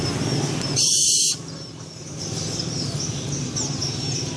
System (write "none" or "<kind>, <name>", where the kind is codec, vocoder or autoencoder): none